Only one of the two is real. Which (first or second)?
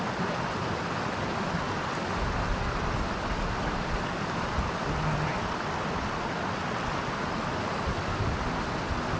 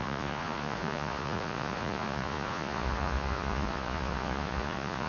first